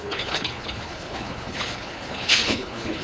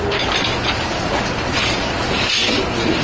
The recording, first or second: second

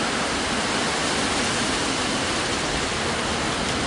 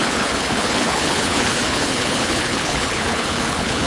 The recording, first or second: first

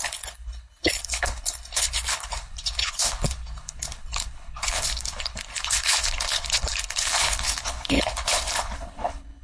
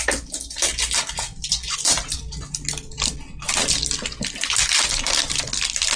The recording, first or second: second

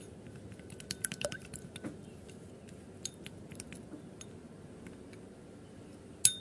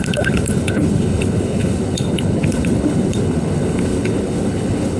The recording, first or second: first